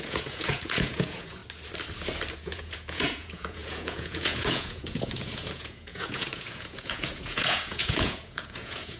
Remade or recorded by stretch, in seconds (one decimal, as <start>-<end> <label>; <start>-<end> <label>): 0.0-1.4 remade; 1.4-2.3 recorded; 2.3-9.0 remade

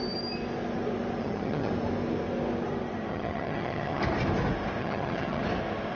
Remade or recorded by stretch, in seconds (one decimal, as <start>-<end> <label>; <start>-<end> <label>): 0.0-1.2 recorded; 1.2-1.7 remade; 1.7-3.1 recorded; 3.1-4.0 remade; 4.0-4.8 recorded; 4.8-5.4 remade; 5.4-6.0 recorded